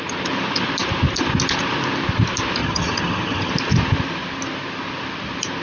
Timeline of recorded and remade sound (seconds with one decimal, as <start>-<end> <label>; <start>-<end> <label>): 0.0-2.6 recorded; 2.6-3.5 remade; 3.5-5.6 recorded